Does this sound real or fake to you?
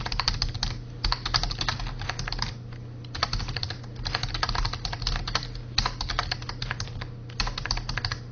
real